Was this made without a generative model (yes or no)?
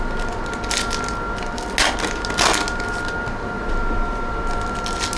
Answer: yes